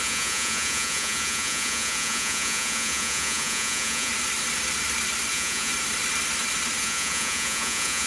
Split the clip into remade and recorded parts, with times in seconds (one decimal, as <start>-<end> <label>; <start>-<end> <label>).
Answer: 0.0-4.1 remade; 4.1-5.3 recorded; 5.3-5.7 remade; 5.7-6.8 recorded; 6.8-8.1 remade